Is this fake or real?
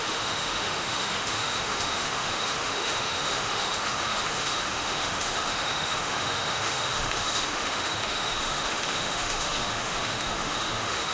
fake